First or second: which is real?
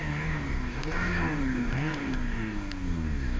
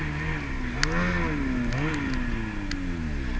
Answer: second